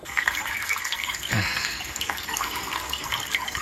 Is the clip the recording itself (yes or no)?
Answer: no